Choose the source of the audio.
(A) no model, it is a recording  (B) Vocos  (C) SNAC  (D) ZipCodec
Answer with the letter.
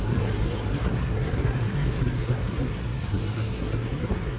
C